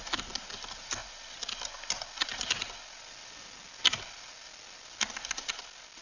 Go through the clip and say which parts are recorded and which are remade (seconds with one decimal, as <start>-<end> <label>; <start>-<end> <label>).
0.0-6.0 recorded